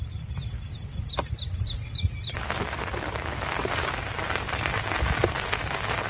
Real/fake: real